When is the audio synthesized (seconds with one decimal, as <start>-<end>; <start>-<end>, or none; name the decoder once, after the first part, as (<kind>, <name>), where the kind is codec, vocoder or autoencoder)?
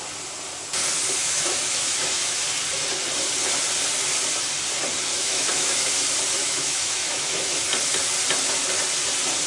1.2-2.4 (autoencoder, DAC-VAE); 5.1-5.9; 6.4-7.6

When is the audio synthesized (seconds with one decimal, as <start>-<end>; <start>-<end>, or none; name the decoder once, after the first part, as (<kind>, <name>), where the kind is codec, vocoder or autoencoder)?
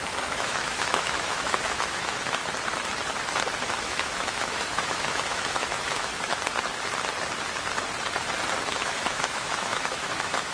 0.0-2.4 (autoencoder, DAC-VAE); 3.6-6.1; 8.7-10.5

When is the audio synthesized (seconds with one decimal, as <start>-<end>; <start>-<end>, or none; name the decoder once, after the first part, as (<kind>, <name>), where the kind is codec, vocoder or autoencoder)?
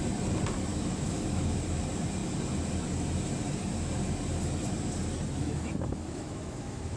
0.7-1.8 (autoencoder, DAC-VAE); 5.4-7.0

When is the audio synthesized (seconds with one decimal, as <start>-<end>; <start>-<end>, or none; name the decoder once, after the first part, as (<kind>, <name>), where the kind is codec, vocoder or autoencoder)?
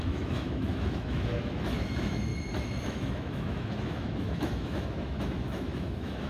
0.0-2.3 (autoencoder, DAC-VAE); 2.8-6.3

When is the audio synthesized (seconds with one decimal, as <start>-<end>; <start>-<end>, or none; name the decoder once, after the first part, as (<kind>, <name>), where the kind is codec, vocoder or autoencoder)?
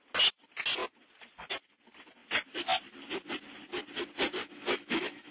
4.4-5.3 (autoencoder, DAC-VAE)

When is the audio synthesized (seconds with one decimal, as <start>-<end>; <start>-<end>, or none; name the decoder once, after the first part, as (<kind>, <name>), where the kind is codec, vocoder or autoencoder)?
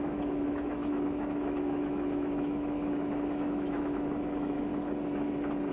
0.0-4.7 (autoencoder, DAC-VAE)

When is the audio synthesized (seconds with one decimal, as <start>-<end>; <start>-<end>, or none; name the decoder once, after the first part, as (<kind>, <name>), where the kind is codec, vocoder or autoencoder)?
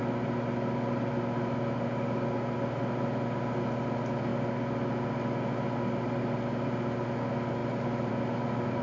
none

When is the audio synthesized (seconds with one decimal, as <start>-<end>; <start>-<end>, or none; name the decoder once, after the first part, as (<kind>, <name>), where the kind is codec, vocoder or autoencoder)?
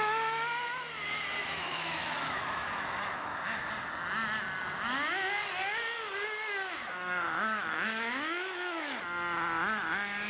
1.4-3.7 (autoencoder, DAC-VAE); 6.8-9.0